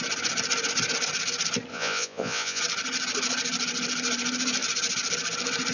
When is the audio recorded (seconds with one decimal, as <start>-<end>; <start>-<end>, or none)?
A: 0.0-1.7; 2.6-5.7